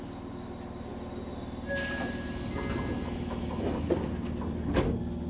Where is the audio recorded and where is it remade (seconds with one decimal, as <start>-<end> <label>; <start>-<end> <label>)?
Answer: 0.0-5.3 recorded